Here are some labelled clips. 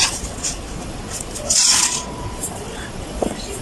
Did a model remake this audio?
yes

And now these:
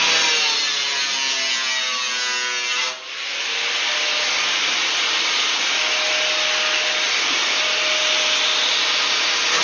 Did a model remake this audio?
no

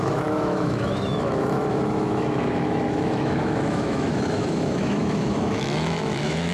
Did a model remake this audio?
yes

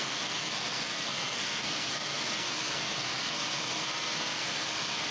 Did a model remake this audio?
yes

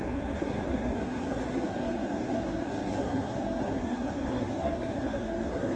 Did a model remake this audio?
yes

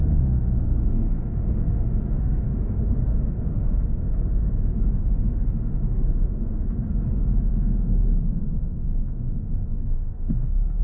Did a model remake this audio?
yes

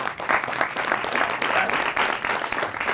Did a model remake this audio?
no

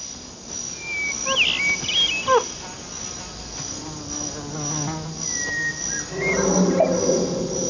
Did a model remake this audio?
no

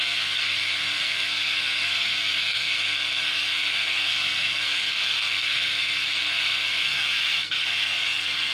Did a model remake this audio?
yes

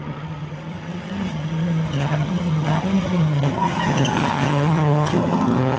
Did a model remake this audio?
yes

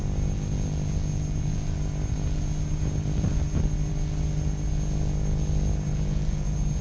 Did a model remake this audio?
no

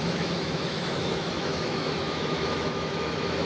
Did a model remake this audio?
yes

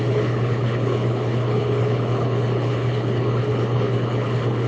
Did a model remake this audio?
yes